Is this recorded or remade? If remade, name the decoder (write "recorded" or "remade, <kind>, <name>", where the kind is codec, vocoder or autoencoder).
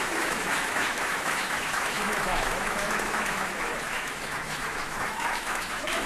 remade, autoencoder, DAC-VAE